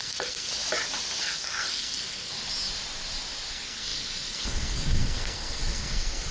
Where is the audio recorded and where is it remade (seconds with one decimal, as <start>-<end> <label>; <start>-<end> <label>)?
0.0-0.5 remade; 0.5-1.2 recorded; 1.2-2.3 remade; 2.3-3.5 recorded; 3.5-6.3 remade